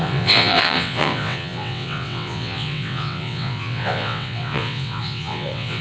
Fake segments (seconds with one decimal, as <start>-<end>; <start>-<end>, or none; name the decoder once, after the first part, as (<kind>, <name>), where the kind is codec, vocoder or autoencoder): 0.0-5.8 (vocoder, WaveNeXt)